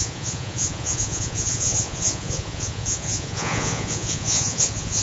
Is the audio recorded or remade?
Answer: remade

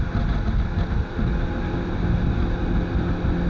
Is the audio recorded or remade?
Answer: recorded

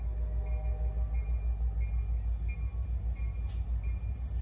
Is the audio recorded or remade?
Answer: recorded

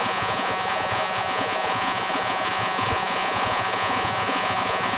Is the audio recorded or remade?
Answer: remade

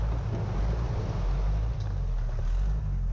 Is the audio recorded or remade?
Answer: recorded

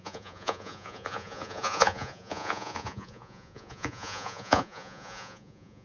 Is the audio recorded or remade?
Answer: remade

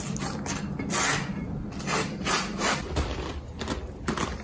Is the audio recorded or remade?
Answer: recorded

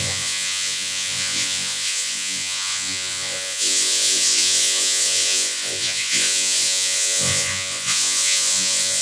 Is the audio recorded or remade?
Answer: remade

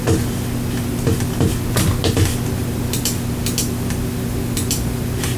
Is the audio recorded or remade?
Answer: recorded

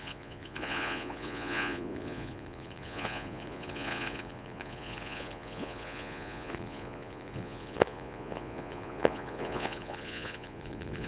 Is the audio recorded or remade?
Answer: remade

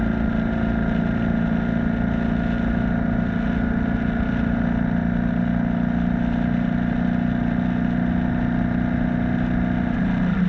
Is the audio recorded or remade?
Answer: recorded